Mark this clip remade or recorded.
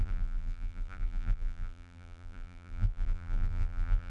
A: remade